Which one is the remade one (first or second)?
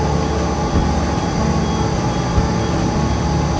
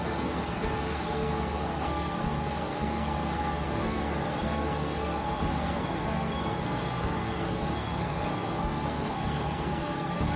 second